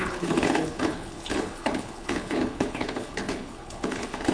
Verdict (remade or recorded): remade